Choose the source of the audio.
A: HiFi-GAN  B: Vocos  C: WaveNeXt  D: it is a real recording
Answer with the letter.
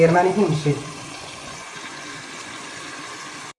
B